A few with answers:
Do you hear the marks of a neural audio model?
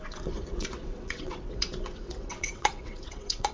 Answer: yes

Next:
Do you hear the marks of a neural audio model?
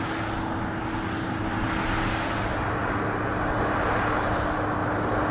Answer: no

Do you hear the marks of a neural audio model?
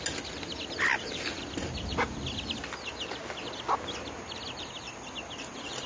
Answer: no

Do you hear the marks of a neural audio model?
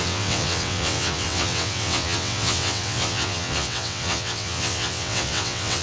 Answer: yes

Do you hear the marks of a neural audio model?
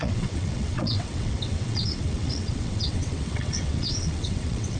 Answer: yes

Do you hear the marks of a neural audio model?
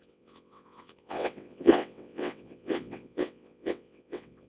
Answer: yes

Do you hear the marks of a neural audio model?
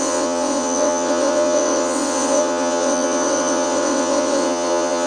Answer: yes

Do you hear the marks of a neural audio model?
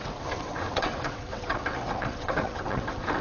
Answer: yes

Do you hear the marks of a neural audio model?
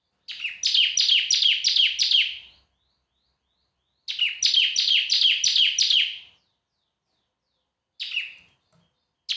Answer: no